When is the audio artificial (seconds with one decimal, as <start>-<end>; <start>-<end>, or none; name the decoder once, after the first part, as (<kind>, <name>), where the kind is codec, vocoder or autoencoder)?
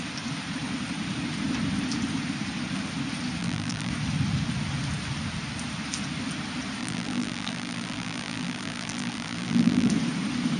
3.4-3.9 (vocoder, BigVGAN v2); 6.8-9.9